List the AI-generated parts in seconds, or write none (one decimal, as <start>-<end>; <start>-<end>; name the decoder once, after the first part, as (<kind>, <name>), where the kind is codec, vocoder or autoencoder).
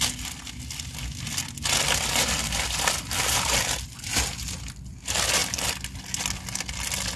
none